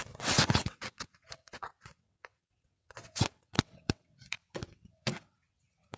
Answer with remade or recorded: remade